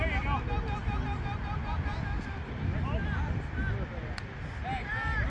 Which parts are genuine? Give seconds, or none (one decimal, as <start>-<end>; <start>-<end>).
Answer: 0.0-5.3